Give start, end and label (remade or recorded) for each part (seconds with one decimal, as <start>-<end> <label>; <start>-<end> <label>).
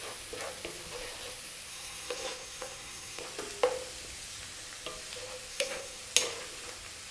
0.0-1.7 recorded; 1.7-3.2 remade; 3.2-5.5 recorded; 5.5-6.0 remade; 6.0-7.1 recorded